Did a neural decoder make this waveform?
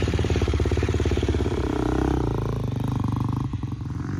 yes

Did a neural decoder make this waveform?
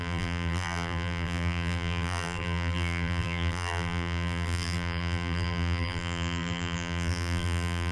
yes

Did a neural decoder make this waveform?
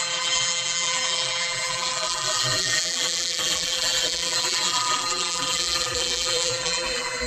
yes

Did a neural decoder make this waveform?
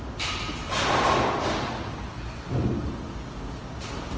no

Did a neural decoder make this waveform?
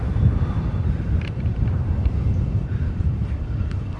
yes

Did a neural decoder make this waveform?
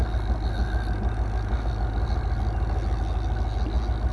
no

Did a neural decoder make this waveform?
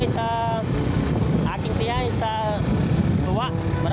no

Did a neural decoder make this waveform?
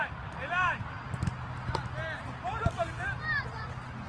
no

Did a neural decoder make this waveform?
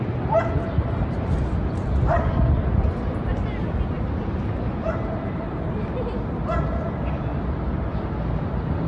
no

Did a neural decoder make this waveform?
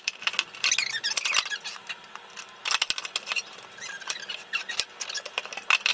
no